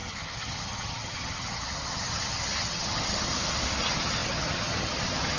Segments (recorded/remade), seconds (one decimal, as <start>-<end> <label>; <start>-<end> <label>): 0.0-3.3 remade; 3.3-3.8 recorded; 3.8-5.4 remade